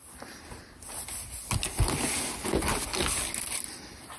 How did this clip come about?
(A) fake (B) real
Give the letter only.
B